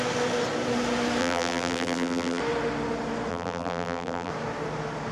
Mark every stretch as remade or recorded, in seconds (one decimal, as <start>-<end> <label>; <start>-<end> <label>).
0.0-1.2 recorded; 1.2-2.4 remade; 2.4-3.3 recorded; 3.3-4.3 remade; 4.3-5.1 recorded